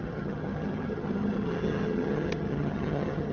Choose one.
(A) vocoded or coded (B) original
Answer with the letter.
A